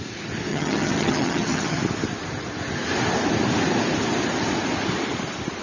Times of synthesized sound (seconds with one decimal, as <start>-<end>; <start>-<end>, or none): 0.5-1.8